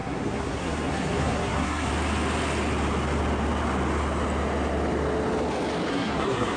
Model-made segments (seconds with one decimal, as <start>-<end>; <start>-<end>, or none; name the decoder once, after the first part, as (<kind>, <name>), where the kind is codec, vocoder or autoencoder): 0.0-1.9 (codec, SNAC); 5.9-6.6